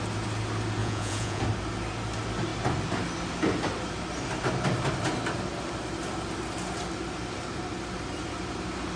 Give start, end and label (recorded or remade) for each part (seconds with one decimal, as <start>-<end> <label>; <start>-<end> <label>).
0.0-0.8 recorded; 0.8-1.4 remade; 1.4-9.0 recorded